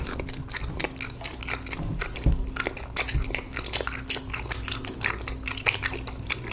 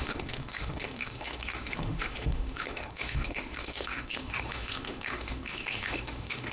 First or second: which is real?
first